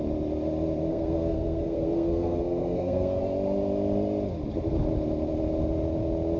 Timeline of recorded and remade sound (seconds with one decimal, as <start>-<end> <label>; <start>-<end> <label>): 0.0-0.9 recorded; 0.9-3.2 remade; 3.2-6.4 recorded